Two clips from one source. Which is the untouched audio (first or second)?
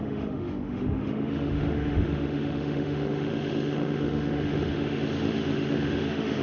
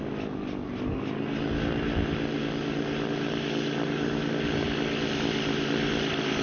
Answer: second